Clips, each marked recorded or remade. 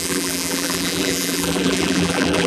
remade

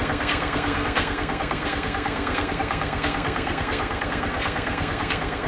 remade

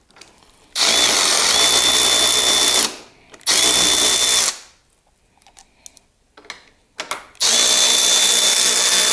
recorded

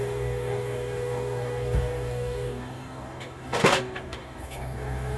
remade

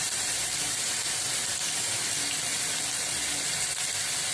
recorded